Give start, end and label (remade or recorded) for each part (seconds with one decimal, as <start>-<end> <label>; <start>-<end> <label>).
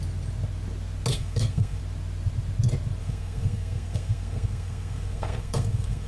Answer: 0.0-1.1 recorded; 1.1-1.8 remade; 1.8-3.0 recorded; 3.0-6.1 remade